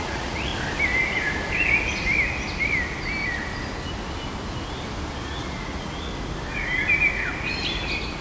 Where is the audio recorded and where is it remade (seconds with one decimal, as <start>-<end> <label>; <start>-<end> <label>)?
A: 0.0-0.5 remade; 0.5-5.2 recorded; 5.2-6.1 remade; 6.1-8.2 recorded

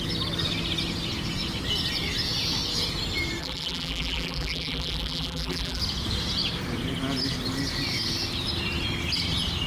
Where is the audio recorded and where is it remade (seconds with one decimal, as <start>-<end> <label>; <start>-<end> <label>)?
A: 0.0-3.4 recorded; 3.4-5.8 remade; 5.8-9.7 recorded

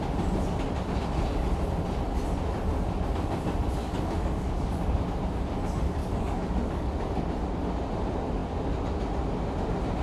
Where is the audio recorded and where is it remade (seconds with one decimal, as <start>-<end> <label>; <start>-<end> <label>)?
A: 0.0-3.8 recorded; 3.8-5.0 remade; 5.0-6.0 recorded; 6.0-7.0 remade; 7.0-10.0 recorded

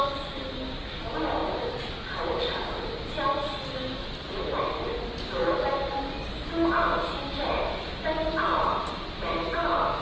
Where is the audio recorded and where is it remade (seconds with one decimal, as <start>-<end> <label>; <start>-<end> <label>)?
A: 0.0-10.0 recorded

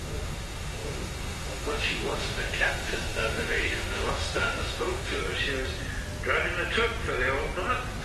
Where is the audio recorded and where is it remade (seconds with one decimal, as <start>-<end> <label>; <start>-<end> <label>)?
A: 0.0-5.2 remade; 5.2-8.0 recorded